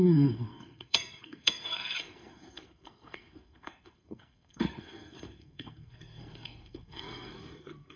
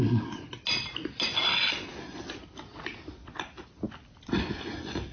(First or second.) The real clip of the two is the second